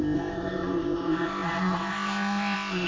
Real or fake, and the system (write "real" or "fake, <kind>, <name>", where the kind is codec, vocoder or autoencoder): fake, codec, ZipCodec